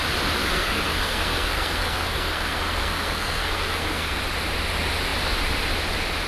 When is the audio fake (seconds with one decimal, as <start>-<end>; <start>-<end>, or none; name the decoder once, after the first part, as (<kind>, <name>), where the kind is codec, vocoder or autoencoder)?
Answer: 0.4-4.2 (codec, SNAC)